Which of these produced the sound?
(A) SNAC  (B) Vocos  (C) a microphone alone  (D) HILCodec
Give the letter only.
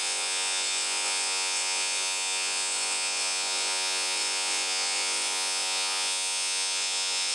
B